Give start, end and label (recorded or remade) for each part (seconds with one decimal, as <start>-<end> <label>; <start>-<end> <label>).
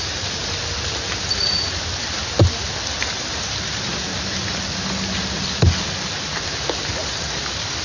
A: 0.0-7.8 recorded